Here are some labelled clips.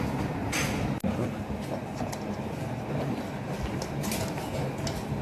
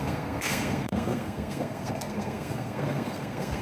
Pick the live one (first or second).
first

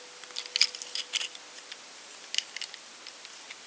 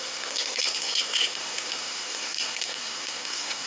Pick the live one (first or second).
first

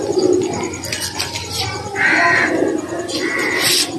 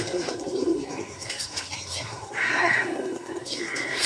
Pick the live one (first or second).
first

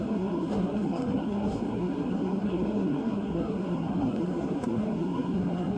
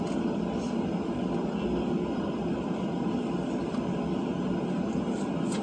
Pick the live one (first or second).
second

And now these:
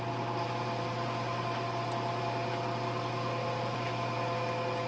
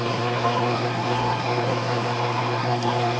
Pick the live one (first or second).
first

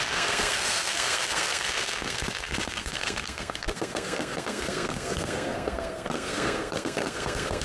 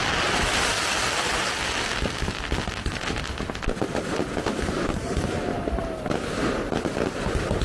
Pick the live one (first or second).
second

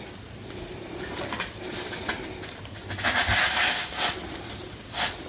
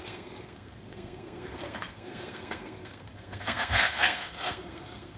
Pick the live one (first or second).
first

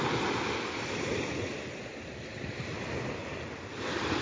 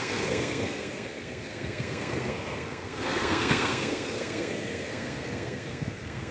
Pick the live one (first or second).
first